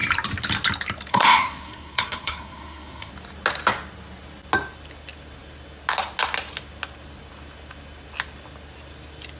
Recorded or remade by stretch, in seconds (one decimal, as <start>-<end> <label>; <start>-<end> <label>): 0.0-1.1 recorded; 1.1-3.1 remade; 3.1-9.4 recorded

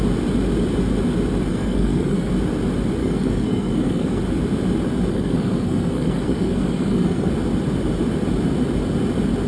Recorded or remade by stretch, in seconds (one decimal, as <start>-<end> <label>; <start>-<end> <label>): 0.0-1.5 recorded; 1.5-2.3 remade; 2.3-3.0 recorded; 3.0-4.2 remade; 4.2-5.1 recorded; 5.1-7.3 remade; 7.3-9.5 recorded

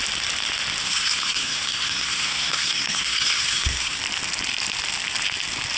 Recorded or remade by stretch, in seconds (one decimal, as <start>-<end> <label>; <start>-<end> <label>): 0.0-0.8 recorded; 0.8-4.0 remade; 4.0-5.8 recorded

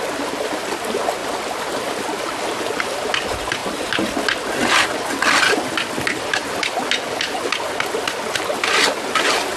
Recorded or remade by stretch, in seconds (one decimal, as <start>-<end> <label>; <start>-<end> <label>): 0.0-9.6 recorded

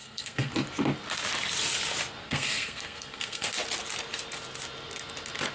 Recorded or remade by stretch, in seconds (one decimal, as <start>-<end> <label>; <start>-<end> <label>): 0.0-0.5 remade; 0.5-2.2 recorded; 2.2-3.5 remade; 3.5-5.5 recorded

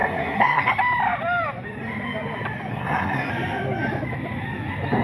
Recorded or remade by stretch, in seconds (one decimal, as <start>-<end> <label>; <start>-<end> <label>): 0.0-0.7 remade; 0.7-2.7 recorded; 2.7-3.3 remade; 3.3-5.0 recorded

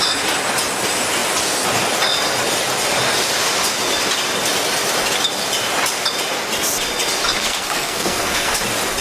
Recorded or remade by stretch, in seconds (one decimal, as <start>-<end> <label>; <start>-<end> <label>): 0.0-7.4 recorded; 7.4-8.6 remade; 8.6-9.0 recorded